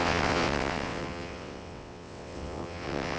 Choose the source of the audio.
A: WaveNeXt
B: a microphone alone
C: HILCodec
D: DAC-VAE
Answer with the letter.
A